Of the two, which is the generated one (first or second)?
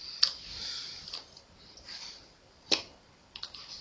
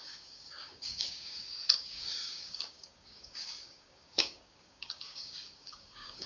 second